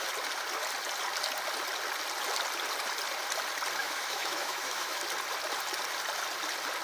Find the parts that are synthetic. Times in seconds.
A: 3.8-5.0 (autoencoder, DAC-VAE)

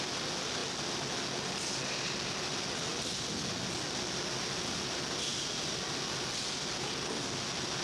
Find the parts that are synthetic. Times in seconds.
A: none

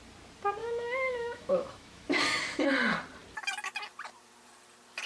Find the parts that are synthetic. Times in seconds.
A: 0.6-2.7 (autoencoder, DAC-VAE)